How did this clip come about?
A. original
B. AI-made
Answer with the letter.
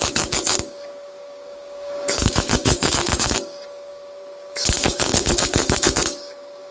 B